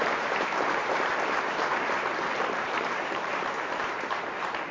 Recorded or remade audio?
remade